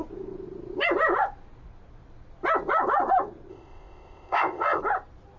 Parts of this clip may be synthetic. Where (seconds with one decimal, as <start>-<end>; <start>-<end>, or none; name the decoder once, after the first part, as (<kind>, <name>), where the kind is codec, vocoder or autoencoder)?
3.5-4.8 (codec, ZipCodec)

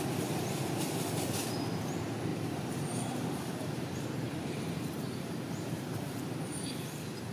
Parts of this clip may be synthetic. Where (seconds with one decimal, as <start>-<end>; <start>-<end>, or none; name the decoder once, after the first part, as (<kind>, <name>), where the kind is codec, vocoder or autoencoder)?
2.3-6.7 (vocoder, BigVGAN v2)

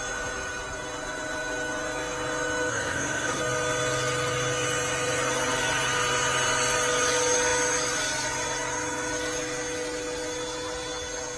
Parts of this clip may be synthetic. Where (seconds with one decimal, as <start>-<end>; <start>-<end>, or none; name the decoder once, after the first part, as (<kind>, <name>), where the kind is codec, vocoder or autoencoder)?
2.7-3.4 (codec, SNAC)

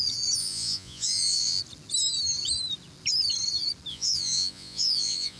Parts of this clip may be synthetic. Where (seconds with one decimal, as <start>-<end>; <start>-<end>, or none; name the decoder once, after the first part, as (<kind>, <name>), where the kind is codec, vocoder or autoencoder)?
0.4-1.6 (vocoder, Vocos); 3.9-5.4